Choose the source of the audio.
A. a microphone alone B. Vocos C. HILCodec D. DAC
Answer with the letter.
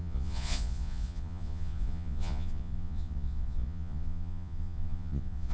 B